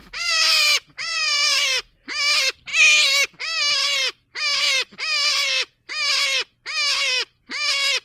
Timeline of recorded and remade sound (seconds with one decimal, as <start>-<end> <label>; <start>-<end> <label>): 0.0-1.6 remade; 1.6-5.3 recorded; 5.3-5.9 remade; 5.9-8.0 recorded